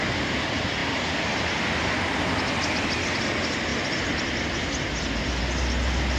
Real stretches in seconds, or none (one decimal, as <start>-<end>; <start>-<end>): 0.0-6.2